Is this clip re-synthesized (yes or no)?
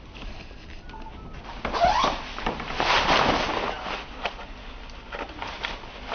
no